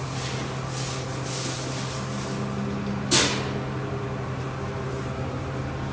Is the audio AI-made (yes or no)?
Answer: no